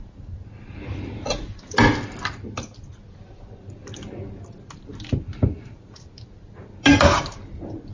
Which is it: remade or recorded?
recorded